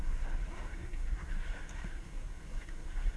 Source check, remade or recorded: remade